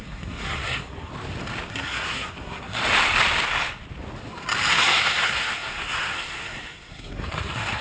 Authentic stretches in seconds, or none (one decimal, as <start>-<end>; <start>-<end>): 1.1-1.7; 2.8-4.7